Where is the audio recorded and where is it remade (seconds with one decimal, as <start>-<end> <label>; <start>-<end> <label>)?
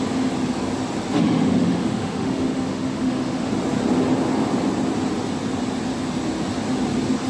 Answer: 0.0-1.2 recorded; 1.2-3.5 remade; 3.5-7.3 recorded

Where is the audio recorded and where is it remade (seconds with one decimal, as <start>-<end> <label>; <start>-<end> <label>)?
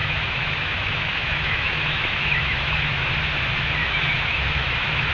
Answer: 0.0-3.1 remade; 3.1-3.8 recorded; 3.8-5.1 remade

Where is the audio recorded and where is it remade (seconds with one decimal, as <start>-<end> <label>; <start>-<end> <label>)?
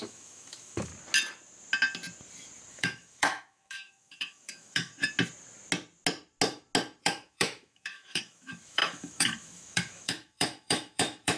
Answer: 0.0-0.9 remade; 0.9-2.7 recorded; 2.7-4.9 remade; 4.9-7.0 recorded; 7.0-11.4 remade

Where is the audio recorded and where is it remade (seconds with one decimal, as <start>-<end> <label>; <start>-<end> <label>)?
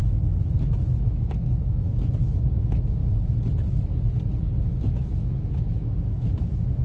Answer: 0.0-0.6 recorded; 0.6-3.0 remade; 3.0-4.6 recorded; 4.6-6.8 remade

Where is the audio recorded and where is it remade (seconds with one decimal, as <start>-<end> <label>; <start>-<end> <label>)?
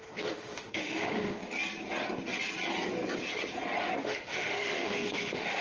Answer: 0.0-1.4 remade; 1.4-4.0 recorded; 4.0-5.6 remade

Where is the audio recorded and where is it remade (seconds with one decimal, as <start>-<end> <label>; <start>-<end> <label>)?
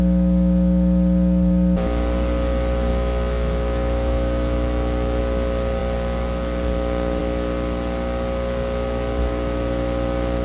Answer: 0.0-2.9 recorded; 2.9-5.2 remade; 5.2-10.4 recorded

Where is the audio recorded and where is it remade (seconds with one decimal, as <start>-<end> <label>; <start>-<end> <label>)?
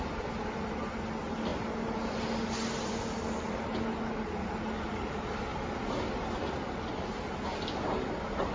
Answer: 0.0-8.5 recorded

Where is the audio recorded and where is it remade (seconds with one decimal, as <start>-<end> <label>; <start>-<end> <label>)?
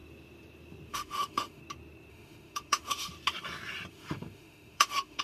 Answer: 0.0-0.9 recorded; 0.9-1.6 remade; 1.6-2.1 recorded; 2.1-3.1 remade; 3.1-3.9 recorded; 3.9-5.2 remade